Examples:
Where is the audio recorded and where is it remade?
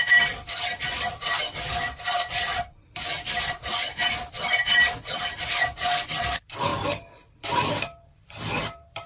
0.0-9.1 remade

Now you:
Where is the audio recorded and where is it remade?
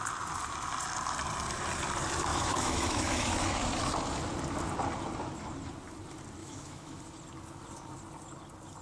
0.0-2.3 recorded; 2.3-3.6 remade; 3.6-6.4 recorded; 6.4-7.0 remade; 7.0-8.8 recorded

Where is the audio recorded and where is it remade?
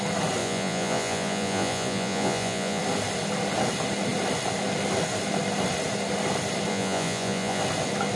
0.0-0.4 recorded; 0.4-2.8 remade; 2.8-6.7 recorded; 6.7-7.6 remade; 7.6-8.2 recorded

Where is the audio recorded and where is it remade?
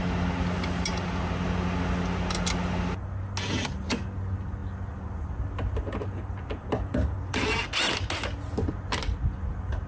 0.0-9.9 recorded